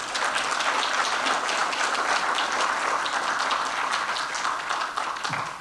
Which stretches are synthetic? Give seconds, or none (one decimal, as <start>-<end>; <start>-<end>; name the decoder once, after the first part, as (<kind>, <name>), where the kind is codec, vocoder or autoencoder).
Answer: none